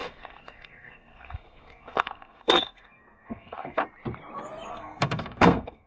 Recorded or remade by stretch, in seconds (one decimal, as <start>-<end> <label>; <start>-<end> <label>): 0.0-3.8 remade; 3.8-4.7 recorded; 4.7-5.9 remade